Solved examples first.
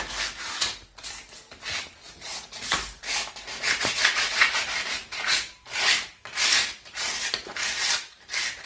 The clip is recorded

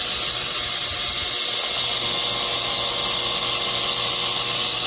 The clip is recorded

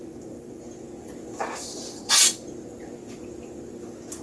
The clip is recorded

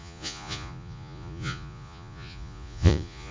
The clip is remade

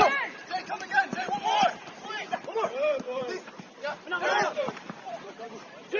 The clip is remade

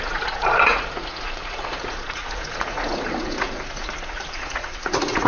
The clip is remade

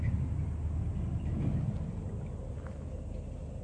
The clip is recorded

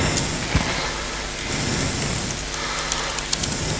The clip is recorded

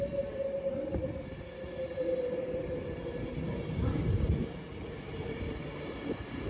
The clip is recorded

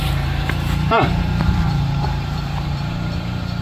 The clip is remade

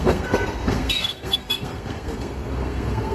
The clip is remade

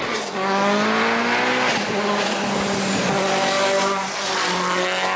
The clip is recorded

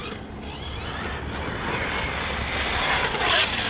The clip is recorded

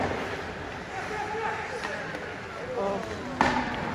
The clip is recorded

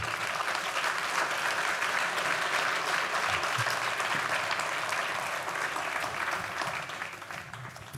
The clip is recorded